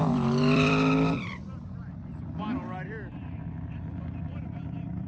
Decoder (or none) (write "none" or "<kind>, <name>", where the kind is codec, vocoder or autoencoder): vocoder, BigVGAN v2